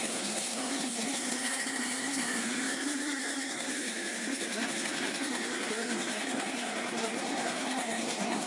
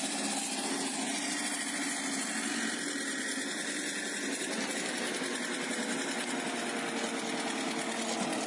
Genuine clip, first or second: second